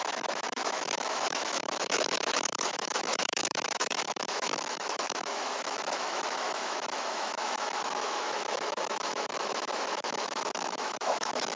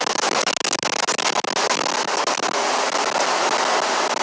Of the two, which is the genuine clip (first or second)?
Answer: second